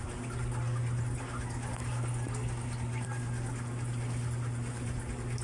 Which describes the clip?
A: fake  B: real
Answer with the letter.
B